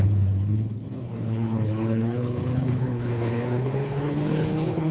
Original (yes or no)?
no